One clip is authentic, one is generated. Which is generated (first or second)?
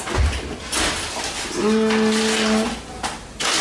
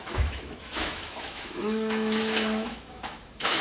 second